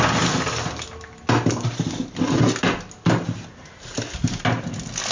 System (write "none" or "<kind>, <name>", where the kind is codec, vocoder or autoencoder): none